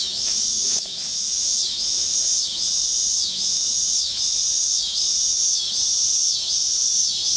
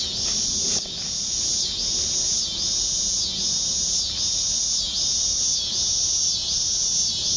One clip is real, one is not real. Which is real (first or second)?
second